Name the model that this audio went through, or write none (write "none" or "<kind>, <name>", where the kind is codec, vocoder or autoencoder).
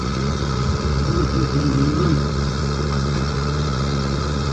vocoder, Vocos